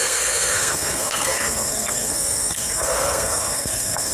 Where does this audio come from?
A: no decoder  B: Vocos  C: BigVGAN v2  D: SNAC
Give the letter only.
D